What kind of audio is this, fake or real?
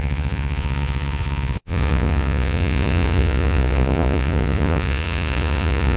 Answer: fake